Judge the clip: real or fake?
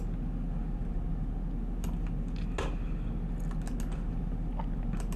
real